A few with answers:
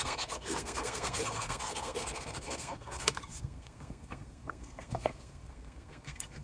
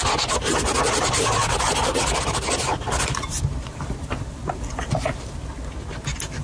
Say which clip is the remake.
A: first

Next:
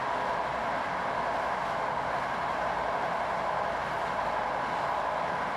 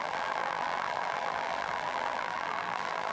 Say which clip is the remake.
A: second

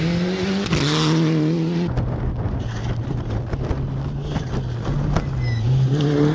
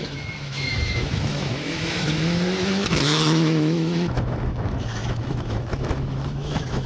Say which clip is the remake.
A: second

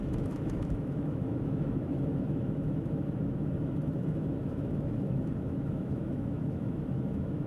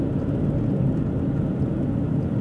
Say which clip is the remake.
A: first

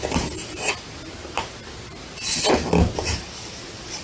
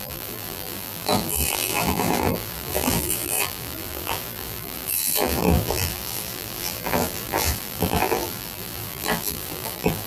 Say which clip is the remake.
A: second